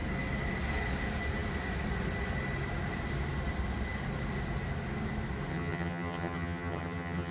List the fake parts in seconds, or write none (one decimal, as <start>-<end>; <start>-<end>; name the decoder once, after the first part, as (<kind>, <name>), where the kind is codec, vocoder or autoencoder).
5.5-7.3 (vocoder, HiFi-GAN)